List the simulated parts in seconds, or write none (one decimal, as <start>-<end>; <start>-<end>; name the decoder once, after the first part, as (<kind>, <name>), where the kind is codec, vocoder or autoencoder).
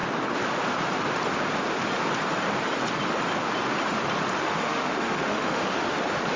4.4-6.0 (autoencoder, DAC-VAE)